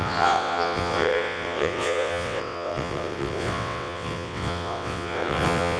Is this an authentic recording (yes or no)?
no